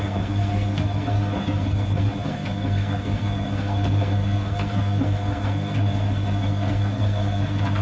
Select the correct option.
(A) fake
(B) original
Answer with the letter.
A